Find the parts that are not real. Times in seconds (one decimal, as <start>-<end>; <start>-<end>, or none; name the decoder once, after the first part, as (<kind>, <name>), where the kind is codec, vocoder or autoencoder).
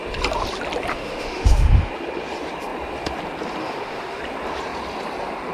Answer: 0.9-1.9 (autoencoder, DAC-VAE); 3.6-4.2